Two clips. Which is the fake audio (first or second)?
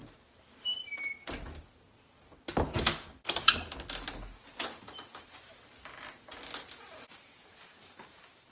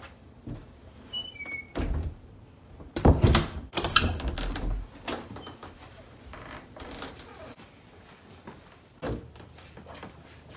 second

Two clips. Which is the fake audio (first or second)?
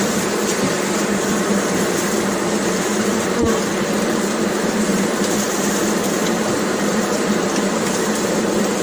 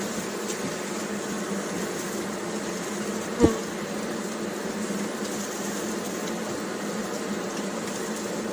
first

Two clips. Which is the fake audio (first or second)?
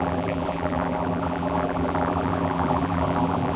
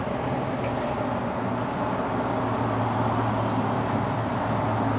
first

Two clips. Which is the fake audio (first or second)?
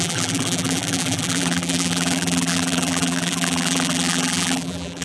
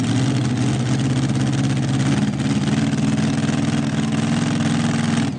first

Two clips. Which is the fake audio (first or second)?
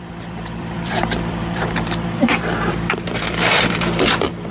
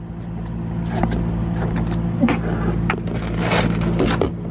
first